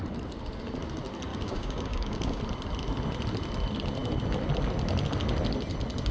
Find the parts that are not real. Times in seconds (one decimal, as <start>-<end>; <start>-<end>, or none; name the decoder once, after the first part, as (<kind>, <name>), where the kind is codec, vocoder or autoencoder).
1.3-2.4 (codec, DAC)